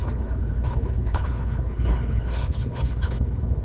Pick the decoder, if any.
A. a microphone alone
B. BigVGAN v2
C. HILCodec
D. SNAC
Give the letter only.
C